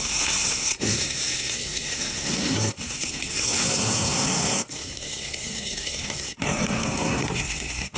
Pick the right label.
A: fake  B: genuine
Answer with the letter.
A